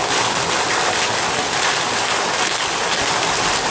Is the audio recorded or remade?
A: recorded